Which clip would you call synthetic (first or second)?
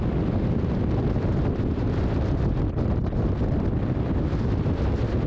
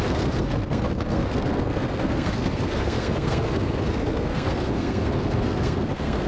second